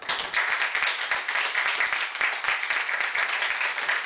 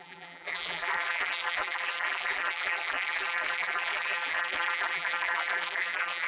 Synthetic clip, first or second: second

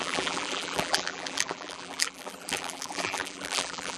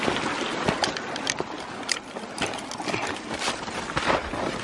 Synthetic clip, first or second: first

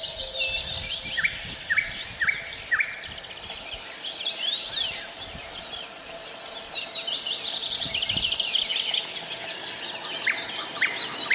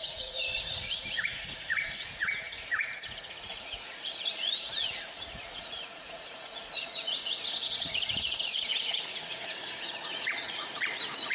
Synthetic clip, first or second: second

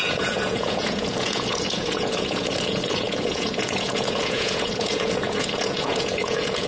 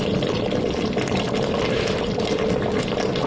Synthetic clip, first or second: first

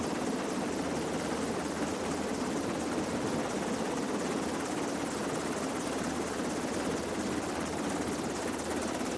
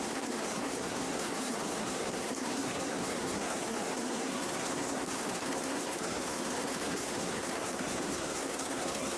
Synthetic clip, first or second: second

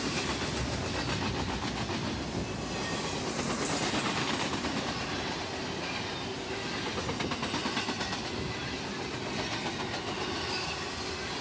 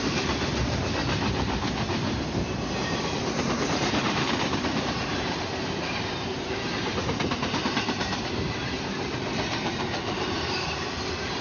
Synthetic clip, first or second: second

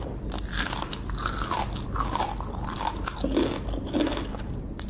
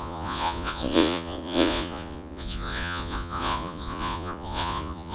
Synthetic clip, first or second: second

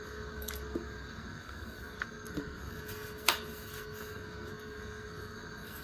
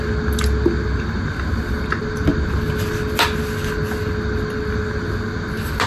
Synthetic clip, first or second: first